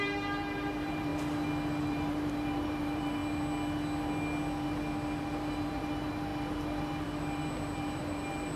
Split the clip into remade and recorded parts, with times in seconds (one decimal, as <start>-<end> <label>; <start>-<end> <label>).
0.0-1.1 remade; 1.1-1.9 recorded; 1.9-3.2 remade; 3.2-5.2 recorded; 5.2-8.6 remade